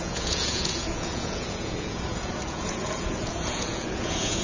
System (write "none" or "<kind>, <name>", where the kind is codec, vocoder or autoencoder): vocoder, Vocos